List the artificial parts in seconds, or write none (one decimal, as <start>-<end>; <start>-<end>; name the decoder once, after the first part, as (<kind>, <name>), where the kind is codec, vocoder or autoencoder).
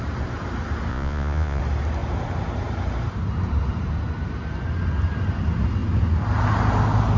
0.9-1.6 (vocoder, Vocos)